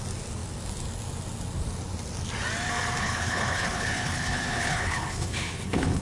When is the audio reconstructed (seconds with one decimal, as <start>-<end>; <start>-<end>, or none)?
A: 3.0-6.0